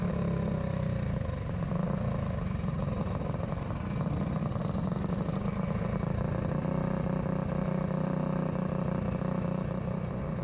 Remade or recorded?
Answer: recorded